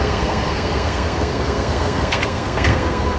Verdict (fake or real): fake